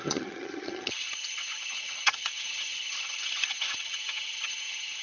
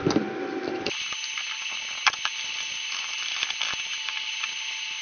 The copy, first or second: first